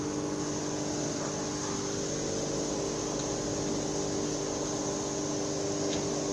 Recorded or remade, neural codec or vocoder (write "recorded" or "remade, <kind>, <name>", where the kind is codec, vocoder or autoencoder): recorded